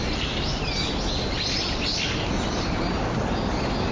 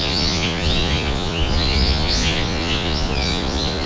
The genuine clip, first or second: first